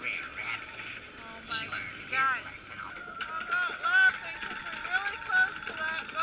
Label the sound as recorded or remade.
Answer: recorded